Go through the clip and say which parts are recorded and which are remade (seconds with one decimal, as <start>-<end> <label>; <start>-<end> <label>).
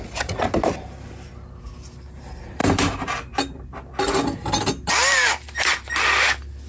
0.0-6.7 recorded